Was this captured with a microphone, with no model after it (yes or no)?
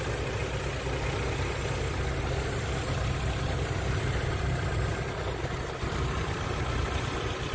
yes